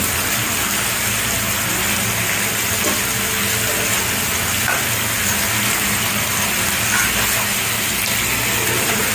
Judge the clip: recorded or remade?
recorded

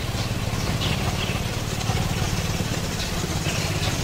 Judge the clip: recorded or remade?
recorded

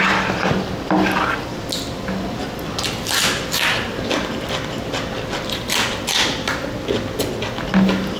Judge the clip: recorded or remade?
recorded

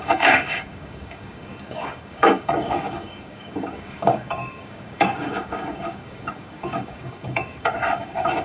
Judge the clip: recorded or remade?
remade